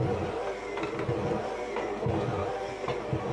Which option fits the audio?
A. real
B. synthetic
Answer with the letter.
A